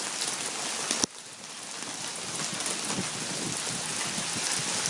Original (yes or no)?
yes